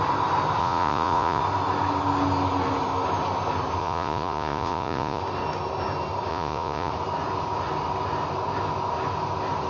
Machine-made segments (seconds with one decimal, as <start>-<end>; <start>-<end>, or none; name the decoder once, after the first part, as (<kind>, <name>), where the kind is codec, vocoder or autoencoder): 0.6-1.4 (vocoder, Vocos); 3.8-5.2; 6.3-6.9